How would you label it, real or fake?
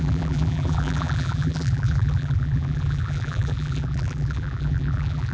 fake